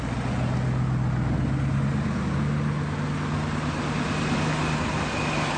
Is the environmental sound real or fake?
real